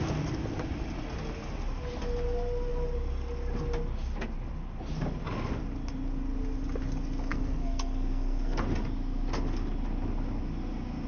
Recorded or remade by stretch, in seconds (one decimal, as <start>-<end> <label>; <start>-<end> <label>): 0.0-7.3 recorded; 7.3-8.6 remade; 8.6-11.1 recorded